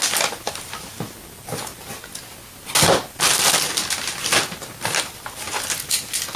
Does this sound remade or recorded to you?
recorded